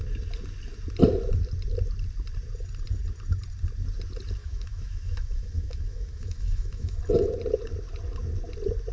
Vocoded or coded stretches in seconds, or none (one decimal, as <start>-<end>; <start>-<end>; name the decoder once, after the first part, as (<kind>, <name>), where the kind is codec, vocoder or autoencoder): 4.4-7.0 (autoencoder, DAC-VAE)